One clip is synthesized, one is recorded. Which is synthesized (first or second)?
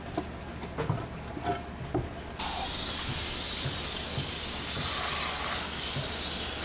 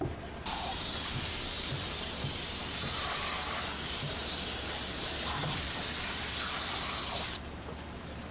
second